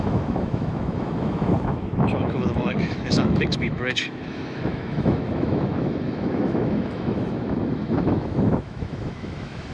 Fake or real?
fake